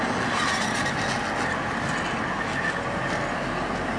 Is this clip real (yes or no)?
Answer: yes